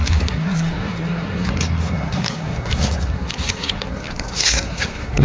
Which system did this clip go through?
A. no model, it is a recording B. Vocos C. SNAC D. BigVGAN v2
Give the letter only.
C